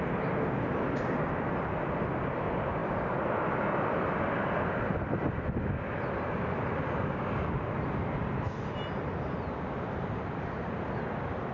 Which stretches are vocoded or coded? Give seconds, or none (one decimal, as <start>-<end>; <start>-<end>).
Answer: none

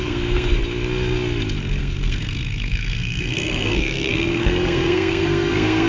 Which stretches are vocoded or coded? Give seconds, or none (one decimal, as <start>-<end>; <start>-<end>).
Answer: 0.0-0.6; 1.8-5.9

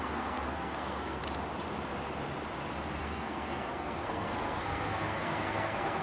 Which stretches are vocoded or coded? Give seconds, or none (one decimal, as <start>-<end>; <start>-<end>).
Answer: 0.0-1.2; 3.0-6.0

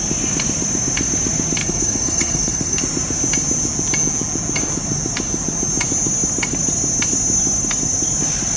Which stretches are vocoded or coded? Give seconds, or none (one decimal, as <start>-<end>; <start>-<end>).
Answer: 1.6-2.8